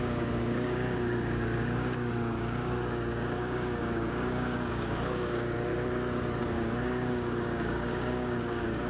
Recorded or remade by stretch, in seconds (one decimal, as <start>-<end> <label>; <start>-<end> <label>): 0.0-5.7 remade; 5.7-6.4 recorded; 6.4-8.9 remade